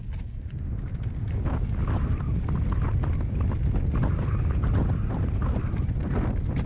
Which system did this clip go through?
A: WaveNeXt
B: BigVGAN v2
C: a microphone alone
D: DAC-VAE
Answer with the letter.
C